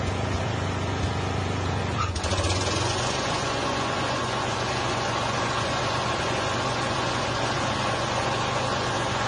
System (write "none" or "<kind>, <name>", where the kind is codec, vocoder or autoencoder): vocoder, Vocos